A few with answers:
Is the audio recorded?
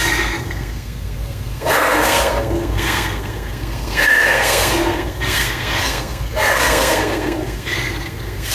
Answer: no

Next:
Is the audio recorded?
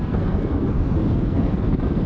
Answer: no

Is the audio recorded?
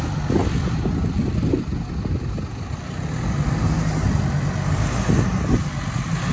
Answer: yes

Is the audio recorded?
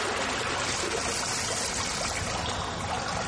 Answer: yes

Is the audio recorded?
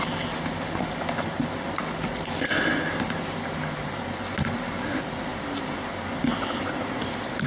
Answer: yes